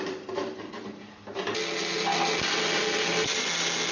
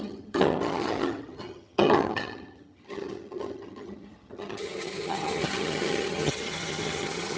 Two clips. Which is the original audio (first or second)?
first